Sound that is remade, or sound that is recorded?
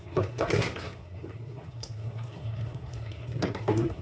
remade